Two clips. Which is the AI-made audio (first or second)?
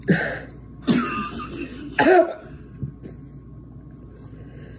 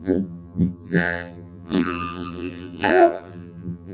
second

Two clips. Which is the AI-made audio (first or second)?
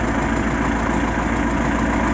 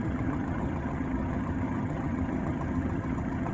second